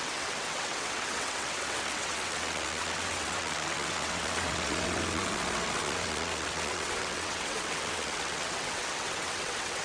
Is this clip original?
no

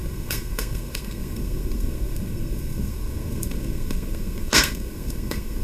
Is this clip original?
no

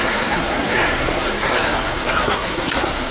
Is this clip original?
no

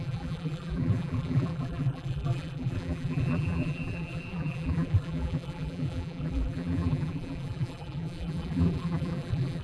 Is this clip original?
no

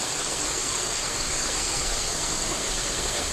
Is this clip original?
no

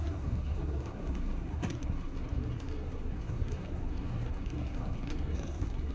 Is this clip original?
no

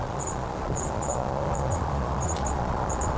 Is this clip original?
no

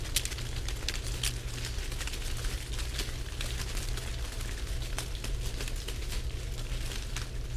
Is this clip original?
yes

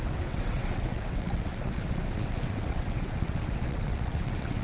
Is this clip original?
no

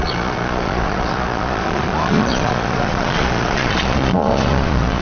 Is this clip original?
no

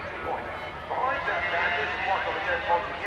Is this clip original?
yes